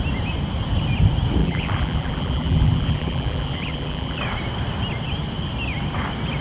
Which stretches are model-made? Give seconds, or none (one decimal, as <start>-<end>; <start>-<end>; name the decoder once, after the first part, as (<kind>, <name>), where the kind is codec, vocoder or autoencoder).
1.4-4.2 (vocoder, BigVGAN v2)